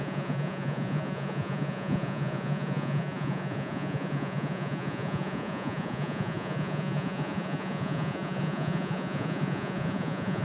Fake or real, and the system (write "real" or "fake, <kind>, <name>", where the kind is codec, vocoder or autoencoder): fake, vocoder, Vocos